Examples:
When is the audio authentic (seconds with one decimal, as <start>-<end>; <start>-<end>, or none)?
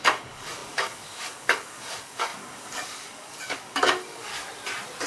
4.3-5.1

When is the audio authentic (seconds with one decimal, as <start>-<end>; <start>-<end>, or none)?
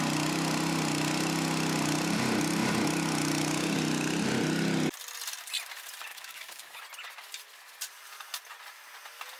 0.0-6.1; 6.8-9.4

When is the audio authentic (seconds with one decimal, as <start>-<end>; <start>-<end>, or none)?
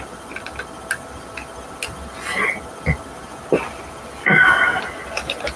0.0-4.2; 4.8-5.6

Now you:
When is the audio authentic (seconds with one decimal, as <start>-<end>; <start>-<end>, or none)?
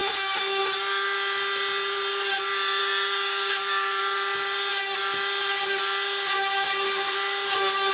0.0-2.8; 4.0-7.9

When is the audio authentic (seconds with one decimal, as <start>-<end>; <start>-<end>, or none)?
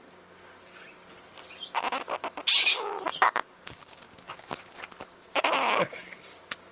0.0-2.7; 4.1-5.4; 5.9-6.7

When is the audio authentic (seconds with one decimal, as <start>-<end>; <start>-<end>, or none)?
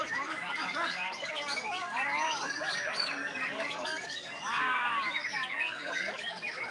none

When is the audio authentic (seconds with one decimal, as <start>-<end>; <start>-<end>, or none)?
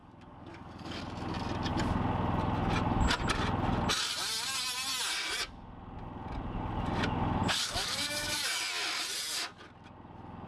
1.0-7.4; 8.4-10.5